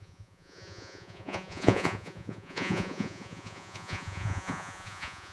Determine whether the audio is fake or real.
fake